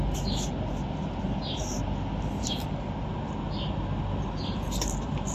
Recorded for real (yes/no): yes